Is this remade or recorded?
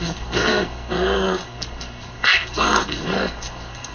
remade